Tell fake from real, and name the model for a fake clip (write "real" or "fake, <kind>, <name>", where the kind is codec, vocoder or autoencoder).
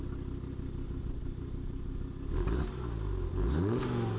real